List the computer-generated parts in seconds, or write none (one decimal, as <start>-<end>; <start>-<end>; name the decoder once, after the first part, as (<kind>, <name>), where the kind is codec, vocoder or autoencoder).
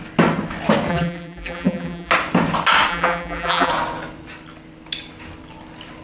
0.9-2.1 (vocoder, BigVGAN v2); 2.9-3.7